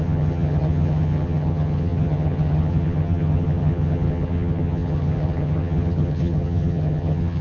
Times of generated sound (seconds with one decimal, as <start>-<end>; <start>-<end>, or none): 0.0-7.4